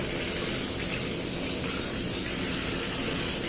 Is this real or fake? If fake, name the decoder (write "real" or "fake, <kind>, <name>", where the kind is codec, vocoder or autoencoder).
real